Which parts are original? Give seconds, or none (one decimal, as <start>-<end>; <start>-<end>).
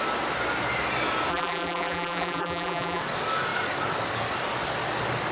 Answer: 0.0-1.3; 3.0-5.3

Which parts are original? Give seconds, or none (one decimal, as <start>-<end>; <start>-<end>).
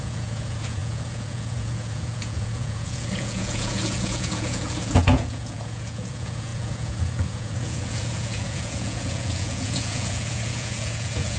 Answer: none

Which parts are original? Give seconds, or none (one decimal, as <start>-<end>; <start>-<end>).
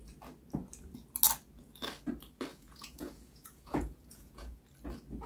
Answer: 0.0-2.5; 4.6-5.3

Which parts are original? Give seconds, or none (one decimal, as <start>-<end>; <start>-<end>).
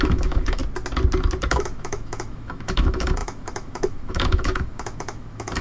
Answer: 0.6-1.5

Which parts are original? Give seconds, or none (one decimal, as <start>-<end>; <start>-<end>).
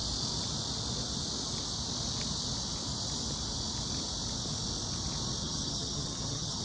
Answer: 0.0-5.4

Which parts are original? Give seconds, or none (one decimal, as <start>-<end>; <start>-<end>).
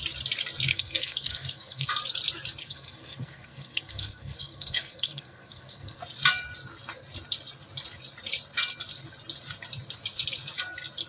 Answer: 0.0-0.7; 1.9-2.6; 6.0-11.1